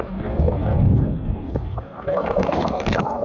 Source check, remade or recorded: remade